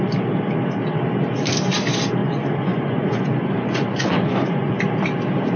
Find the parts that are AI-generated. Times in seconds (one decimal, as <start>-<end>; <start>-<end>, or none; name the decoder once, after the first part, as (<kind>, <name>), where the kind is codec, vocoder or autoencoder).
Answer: 2.2-4.7 (vocoder, Vocos)